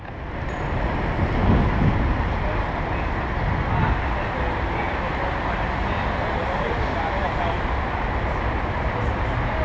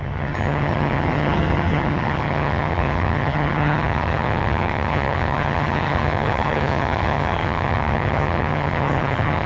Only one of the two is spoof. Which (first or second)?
second